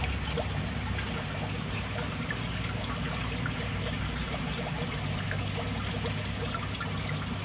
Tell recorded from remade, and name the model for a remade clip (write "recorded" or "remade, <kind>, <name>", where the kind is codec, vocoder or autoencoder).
recorded